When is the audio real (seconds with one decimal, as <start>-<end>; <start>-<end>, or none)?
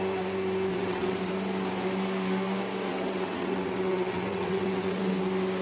0.0-0.7; 1.3-2.9; 5.1-5.6